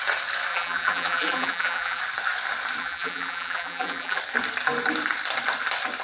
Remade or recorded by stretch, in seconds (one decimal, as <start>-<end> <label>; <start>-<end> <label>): 0.0-0.5 recorded; 0.5-2.0 remade; 2.0-2.8 recorded; 2.8-4.2 remade; 4.2-6.0 recorded